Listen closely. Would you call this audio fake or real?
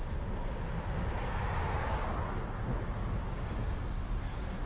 real